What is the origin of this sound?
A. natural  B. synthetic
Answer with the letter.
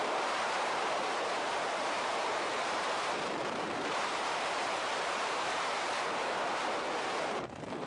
B